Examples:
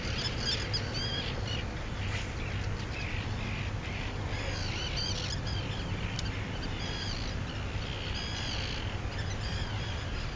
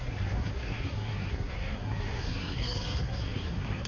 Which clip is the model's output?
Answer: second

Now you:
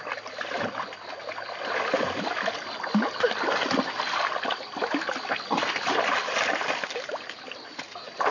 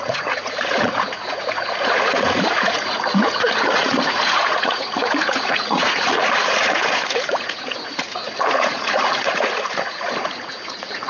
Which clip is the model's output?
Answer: second